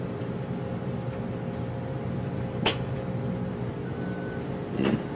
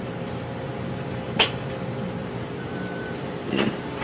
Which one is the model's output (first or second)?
second